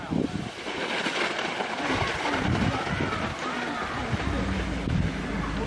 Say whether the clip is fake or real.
real